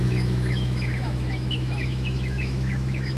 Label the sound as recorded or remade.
remade